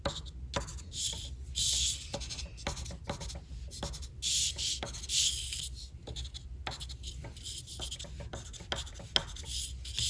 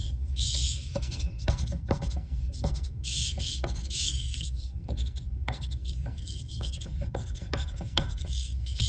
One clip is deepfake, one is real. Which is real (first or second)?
first